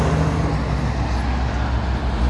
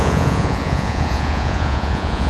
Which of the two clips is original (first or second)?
first